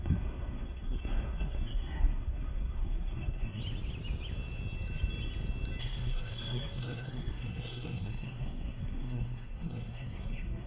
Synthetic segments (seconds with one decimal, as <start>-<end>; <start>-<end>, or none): 0.0-3.6; 5.8-10.7